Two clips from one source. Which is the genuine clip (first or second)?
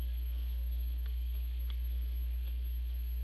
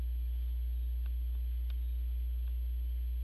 second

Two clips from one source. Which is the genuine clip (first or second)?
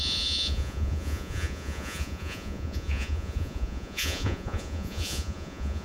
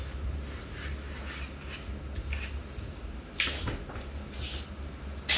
second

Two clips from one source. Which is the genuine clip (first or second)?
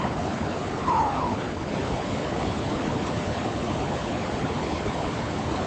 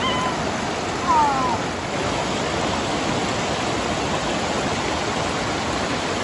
second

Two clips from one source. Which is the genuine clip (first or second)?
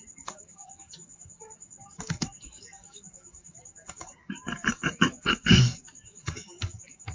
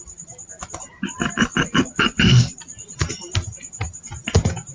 second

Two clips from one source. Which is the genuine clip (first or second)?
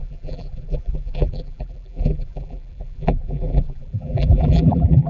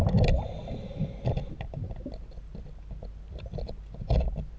second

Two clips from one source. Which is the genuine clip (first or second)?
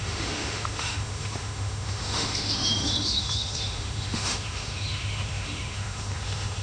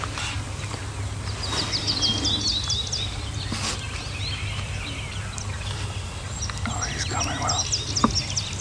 second